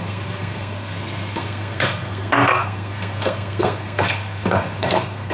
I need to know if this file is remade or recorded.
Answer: remade